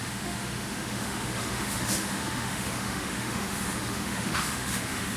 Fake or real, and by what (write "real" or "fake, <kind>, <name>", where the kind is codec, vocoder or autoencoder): fake, autoencoder, DAC-VAE